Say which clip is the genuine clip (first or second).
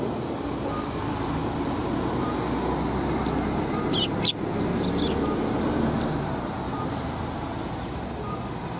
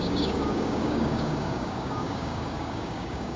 first